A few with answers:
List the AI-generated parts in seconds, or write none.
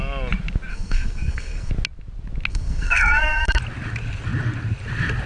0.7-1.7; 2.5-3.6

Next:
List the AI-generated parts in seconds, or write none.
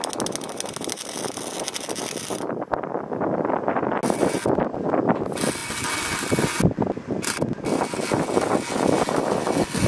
none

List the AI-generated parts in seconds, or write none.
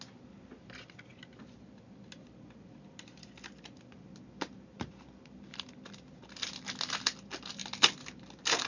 none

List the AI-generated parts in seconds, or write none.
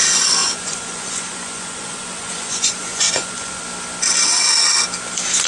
0.4-3.6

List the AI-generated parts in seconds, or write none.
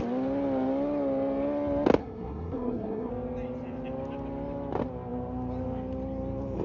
2.0-3.1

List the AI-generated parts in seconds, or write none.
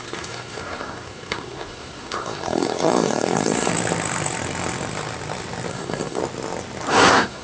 0.0-3.7; 5.7-6.2; 6.9-7.4